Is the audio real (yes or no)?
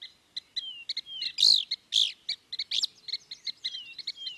yes